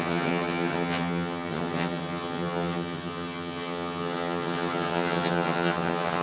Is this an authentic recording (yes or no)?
no